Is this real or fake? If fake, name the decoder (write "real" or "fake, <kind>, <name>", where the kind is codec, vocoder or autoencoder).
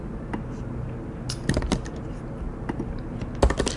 real